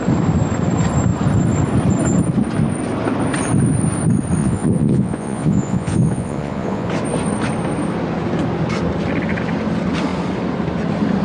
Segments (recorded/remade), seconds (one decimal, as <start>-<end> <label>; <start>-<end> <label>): 0.0-4.4 recorded; 4.4-6.9 remade; 6.9-11.2 recorded